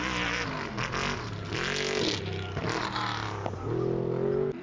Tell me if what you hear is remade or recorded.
recorded